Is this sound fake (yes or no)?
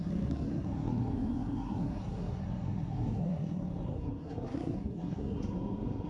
yes